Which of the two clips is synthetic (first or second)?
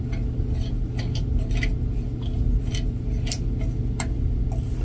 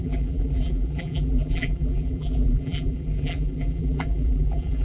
second